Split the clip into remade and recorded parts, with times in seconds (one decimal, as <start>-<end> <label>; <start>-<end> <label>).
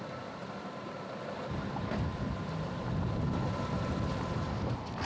0.0-5.0 recorded